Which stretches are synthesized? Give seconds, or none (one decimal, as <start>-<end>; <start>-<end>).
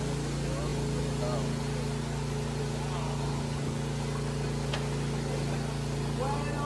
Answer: none